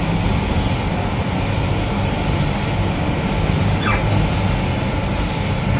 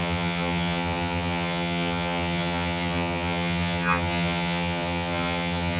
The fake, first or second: second